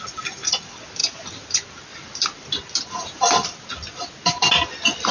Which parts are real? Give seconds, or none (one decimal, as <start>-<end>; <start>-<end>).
0.0-5.1